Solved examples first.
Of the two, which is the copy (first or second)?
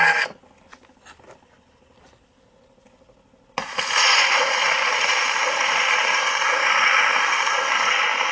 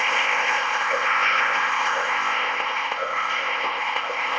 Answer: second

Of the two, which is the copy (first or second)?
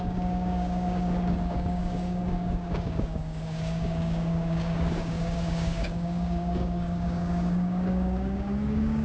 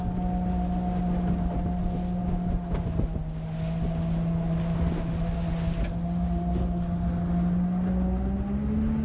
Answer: first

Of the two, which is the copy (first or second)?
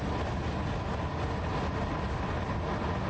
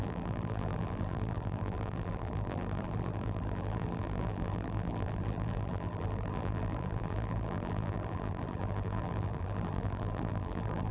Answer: second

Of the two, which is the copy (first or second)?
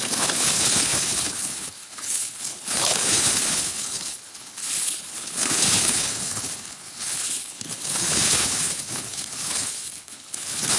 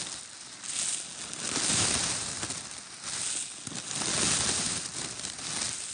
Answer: first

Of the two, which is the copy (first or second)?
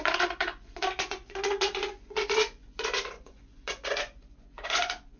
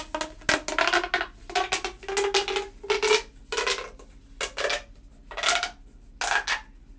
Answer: first